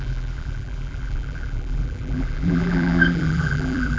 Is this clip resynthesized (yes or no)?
yes